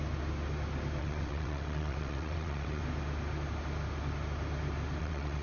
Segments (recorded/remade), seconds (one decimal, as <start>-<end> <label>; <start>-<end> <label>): 0.0-1.0 recorded; 1.0-2.8 remade; 2.8-5.0 recorded; 5.0-5.4 remade